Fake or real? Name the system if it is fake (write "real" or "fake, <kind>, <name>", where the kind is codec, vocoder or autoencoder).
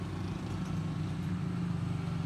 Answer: real